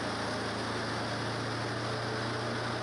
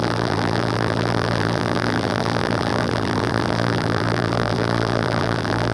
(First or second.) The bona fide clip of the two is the first